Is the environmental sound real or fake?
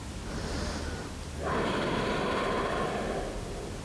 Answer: real